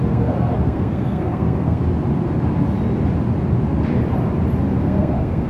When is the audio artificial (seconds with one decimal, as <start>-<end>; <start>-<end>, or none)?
0.0-1.8; 4.8-5.5